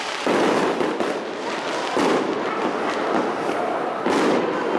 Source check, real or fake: real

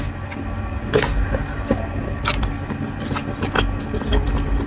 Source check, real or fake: real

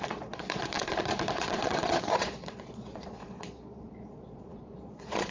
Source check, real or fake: fake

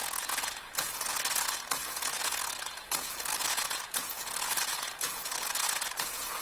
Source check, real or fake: fake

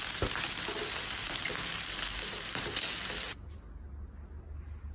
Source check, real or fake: real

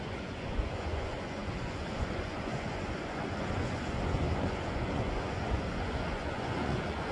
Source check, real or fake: fake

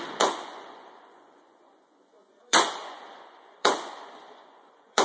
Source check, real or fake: fake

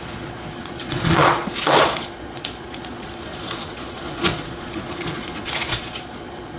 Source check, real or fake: fake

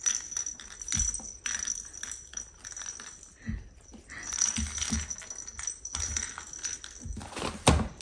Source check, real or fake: real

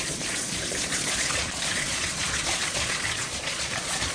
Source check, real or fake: fake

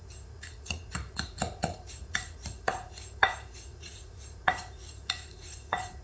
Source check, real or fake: fake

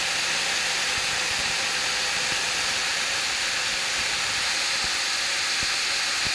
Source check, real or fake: real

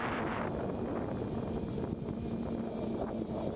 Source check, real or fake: real